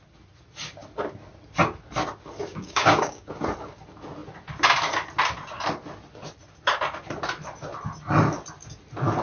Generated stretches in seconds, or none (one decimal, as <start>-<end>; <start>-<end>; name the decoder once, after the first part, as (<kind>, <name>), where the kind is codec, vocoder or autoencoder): 2.5-3.3 (codec, DAC)